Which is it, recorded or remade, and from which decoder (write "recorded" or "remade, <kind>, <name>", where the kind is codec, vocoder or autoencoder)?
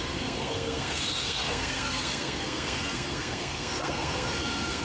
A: remade, codec, SNAC